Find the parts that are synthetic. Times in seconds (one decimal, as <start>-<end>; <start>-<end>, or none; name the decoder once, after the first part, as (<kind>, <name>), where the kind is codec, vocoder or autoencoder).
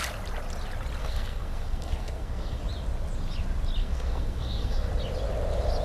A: 1.0-2.6 (codec, SNAC); 3.8-4.9